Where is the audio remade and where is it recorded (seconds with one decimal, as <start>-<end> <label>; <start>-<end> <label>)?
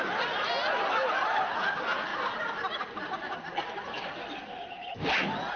0.0-5.6 recorded